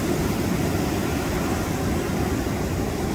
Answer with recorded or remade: recorded